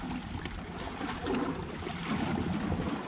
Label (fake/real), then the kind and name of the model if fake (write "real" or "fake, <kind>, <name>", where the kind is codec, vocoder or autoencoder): real